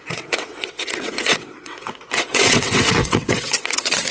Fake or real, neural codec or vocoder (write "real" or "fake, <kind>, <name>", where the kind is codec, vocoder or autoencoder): fake, vocoder, WaveNeXt